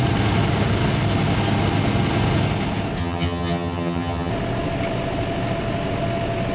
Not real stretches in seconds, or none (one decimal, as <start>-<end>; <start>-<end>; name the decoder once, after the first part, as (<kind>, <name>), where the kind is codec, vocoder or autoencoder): 3.0-4.3 (vocoder, HiFi-GAN)

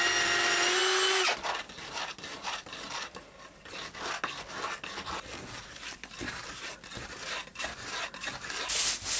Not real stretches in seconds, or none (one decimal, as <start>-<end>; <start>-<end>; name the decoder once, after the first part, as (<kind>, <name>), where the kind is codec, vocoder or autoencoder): none

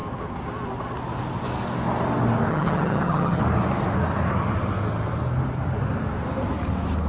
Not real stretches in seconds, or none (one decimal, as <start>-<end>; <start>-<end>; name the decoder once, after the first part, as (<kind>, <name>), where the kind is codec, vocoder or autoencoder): 2.5-3.4 (vocoder, HiFi-GAN)

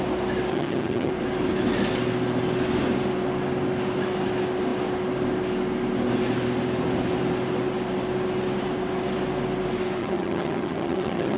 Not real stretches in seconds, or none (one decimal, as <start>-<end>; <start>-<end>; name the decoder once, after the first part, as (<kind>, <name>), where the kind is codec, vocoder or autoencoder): 0.5-1.1 (vocoder, HiFi-GAN); 10.0-11.4

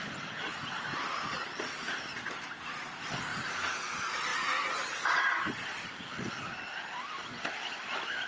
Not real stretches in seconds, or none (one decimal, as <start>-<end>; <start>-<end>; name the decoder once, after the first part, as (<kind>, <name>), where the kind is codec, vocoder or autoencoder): none

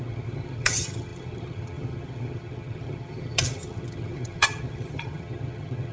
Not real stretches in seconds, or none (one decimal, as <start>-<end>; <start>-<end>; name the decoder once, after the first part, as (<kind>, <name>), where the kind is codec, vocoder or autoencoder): 0.0-5.9 (vocoder, HiFi-GAN)

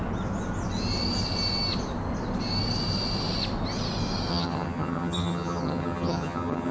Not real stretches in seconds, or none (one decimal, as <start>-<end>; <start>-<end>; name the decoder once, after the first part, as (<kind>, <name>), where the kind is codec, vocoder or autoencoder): 4.3-6.7 (vocoder, HiFi-GAN)

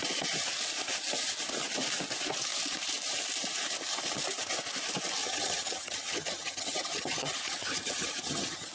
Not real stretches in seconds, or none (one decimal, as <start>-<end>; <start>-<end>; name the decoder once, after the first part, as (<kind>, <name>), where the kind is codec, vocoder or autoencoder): 5.2-8.7 (vocoder, HiFi-GAN)